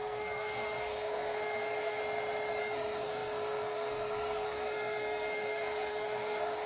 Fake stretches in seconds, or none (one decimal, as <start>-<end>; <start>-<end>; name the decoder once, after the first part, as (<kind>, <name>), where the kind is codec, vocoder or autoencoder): 0.0-2.0 (codec, SNAC); 2.6-6.7